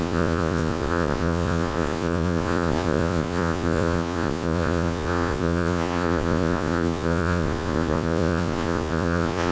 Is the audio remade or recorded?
remade